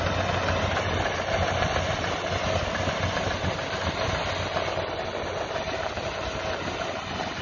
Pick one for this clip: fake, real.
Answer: real